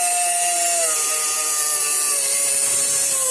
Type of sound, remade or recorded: recorded